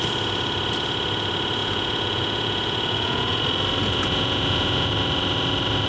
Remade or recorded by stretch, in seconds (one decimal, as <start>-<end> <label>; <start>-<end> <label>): 0.0-1.6 recorded; 1.6-3.4 remade; 3.4-3.8 recorded; 3.8-4.9 remade; 4.9-5.9 recorded